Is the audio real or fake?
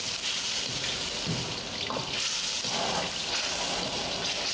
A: real